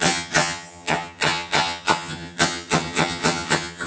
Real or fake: fake